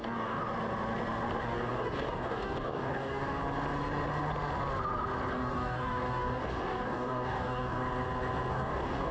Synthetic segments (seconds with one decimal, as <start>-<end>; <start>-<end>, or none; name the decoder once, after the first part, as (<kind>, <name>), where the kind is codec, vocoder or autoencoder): 0.0-0.4 (codec, DAC); 1.4-3.4; 5.3-7.8; 8.5-9.1